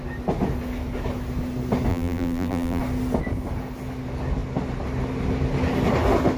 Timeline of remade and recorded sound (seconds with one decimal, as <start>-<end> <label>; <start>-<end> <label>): 0.0-1.9 recorded; 1.9-2.8 remade; 2.8-6.4 recorded